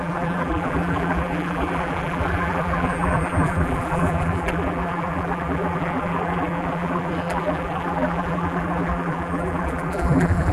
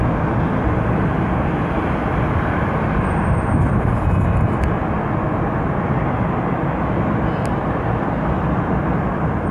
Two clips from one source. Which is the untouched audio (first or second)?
second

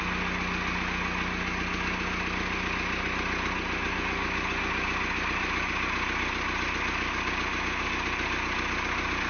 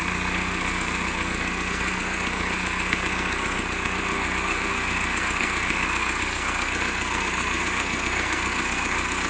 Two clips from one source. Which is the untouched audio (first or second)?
first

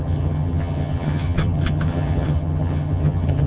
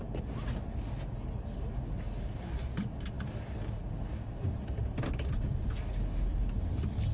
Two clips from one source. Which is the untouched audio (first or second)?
second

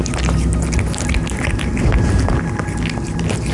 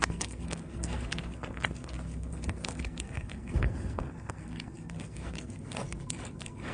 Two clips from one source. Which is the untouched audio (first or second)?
first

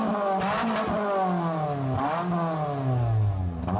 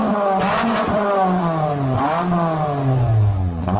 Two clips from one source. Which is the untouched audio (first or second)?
first